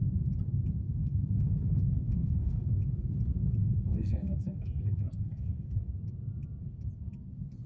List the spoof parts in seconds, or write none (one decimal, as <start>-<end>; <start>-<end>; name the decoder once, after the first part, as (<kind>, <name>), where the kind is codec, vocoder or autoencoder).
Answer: 1.0-2.8 (codec, SNAC); 3.6-5.9